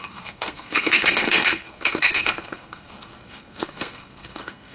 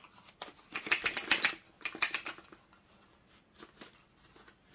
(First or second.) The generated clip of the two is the first